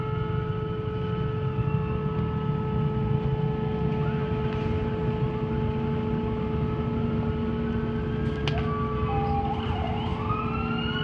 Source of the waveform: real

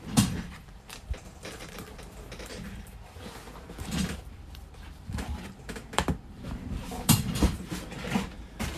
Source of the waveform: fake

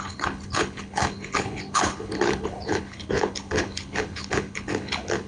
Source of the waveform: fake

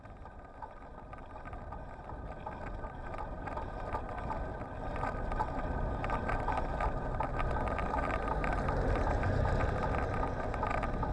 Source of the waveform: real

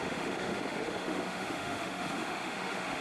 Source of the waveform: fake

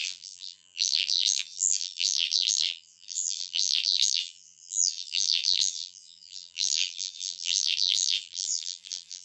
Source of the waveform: fake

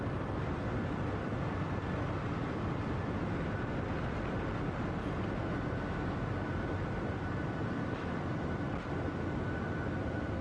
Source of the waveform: real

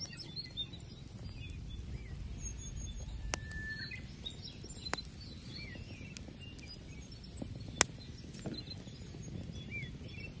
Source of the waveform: real